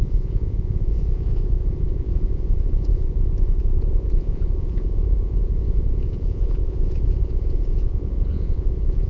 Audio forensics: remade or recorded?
remade